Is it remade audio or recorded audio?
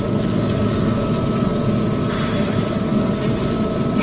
recorded